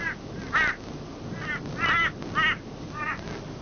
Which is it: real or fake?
real